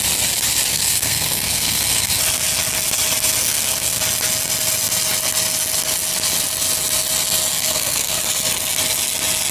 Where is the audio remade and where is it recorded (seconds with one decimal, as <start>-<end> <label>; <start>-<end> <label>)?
0.0-0.7 recorded; 0.7-2.1 remade; 2.1-3.4 recorded; 3.4-4.0 remade; 4.0-7.5 recorded; 7.5-8.2 remade; 8.2-9.5 recorded